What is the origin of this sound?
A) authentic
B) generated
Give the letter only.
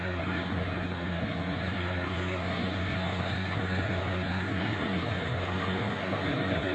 B